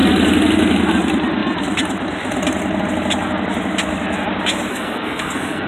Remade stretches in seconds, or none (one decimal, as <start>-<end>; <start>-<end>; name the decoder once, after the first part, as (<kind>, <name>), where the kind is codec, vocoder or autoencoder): 4.7-5.7 (codec, SNAC)